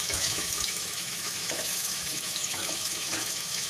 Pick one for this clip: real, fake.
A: fake